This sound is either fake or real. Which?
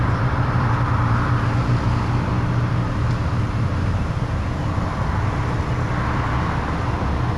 real